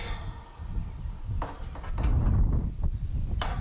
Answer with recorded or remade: recorded